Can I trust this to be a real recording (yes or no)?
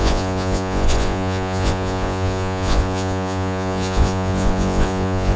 no